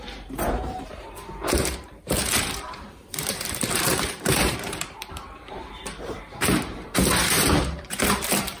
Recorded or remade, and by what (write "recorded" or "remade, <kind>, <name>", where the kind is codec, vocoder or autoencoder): remade, vocoder, BigVGAN v2